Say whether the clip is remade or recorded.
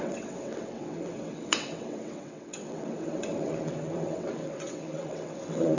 remade